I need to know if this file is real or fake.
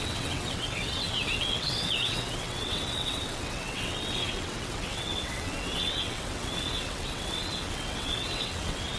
fake